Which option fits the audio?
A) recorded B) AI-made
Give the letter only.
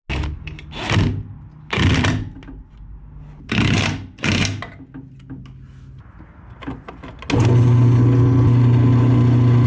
A